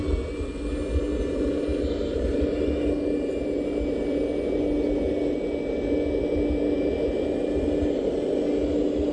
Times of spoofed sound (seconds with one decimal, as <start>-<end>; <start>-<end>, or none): none